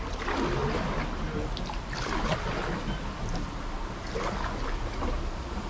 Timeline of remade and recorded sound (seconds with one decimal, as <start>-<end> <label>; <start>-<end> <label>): 0.0-5.7 recorded